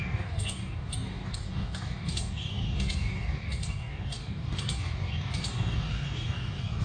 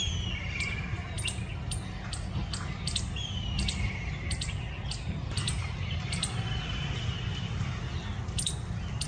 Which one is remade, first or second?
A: first